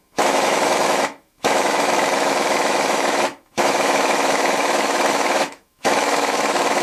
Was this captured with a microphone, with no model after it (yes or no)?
no